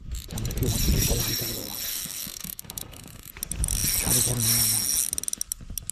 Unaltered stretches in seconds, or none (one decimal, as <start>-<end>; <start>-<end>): 0.0-1.9; 3.3-5.9